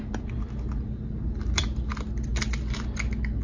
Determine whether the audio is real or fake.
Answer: real